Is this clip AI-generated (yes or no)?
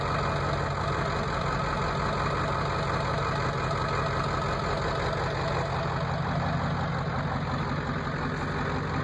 no